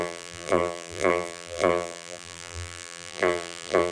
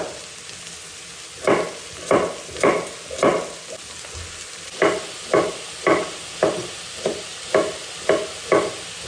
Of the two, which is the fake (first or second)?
first